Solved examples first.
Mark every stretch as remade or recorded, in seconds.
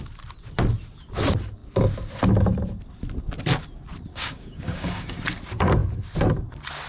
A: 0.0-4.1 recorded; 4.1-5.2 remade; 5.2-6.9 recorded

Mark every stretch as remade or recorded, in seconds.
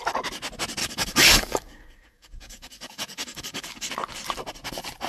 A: 0.0-0.8 recorded; 0.8-3.9 remade; 3.9-5.1 recorded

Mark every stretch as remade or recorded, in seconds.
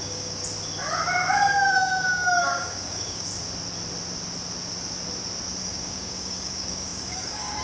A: 0.0-0.4 remade; 0.4-1.5 recorded; 1.5-3.3 remade; 3.3-5.6 recorded; 5.6-7.6 remade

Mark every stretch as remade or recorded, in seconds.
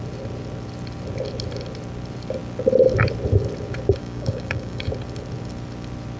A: 0.0-4.0 recorded; 4.0-4.9 remade; 4.9-6.2 recorded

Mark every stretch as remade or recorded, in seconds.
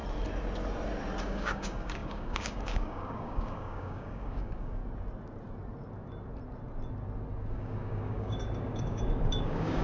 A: 0.0-1.2 recorded; 1.2-4.8 remade; 4.8-7.5 recorded; 7.5-9.8 remade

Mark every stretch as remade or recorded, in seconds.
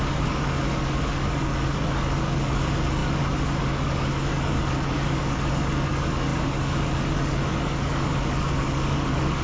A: 0.0-9.4 remade